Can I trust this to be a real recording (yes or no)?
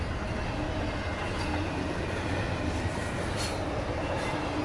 yes